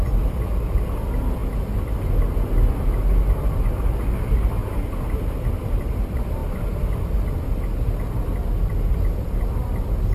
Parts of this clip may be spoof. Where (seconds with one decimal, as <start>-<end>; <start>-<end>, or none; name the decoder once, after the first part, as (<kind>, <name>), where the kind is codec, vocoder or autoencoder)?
none